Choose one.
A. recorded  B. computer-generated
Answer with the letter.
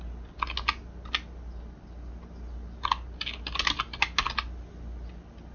A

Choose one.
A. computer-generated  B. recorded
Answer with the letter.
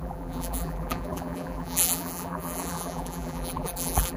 A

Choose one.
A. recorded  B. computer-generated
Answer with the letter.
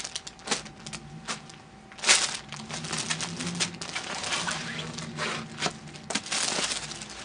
A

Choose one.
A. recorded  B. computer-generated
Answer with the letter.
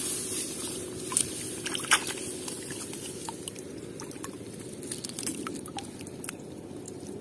A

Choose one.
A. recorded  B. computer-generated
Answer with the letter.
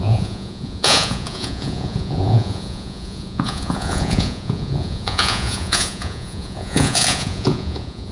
B